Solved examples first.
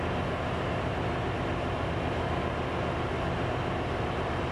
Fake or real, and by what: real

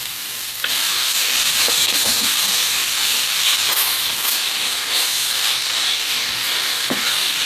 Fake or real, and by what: fake, codec, DAC